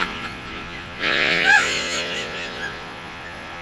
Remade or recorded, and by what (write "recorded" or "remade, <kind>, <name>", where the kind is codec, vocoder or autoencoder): remade, vocoder, Vocos